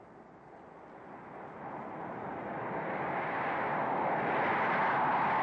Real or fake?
real